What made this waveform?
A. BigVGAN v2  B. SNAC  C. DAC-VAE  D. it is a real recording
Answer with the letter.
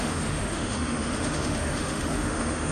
C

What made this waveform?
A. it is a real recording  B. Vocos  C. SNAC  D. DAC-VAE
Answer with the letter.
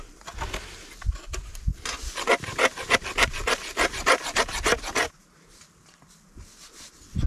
A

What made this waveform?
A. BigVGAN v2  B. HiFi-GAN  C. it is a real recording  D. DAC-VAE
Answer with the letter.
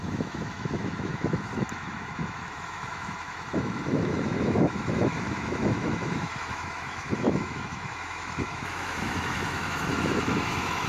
D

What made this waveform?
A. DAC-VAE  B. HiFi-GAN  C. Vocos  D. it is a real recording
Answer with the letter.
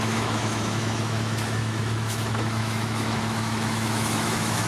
A